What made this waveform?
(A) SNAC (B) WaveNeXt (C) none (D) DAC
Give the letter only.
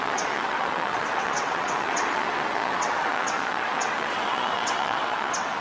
B